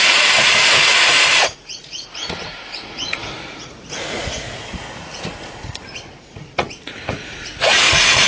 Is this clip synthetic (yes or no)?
yes